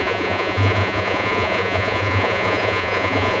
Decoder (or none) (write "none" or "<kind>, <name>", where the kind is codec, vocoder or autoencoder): vocoder, Vocos